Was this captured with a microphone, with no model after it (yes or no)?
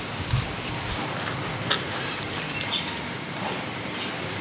no